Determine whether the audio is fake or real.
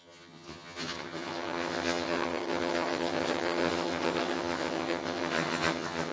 fake